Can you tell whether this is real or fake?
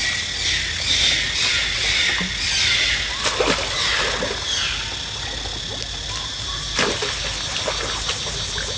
real